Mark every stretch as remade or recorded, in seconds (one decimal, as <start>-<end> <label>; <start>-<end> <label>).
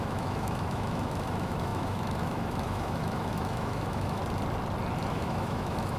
0.0-4.2 remade; 4.2-5.1 recorded; 5.1-6.0 remade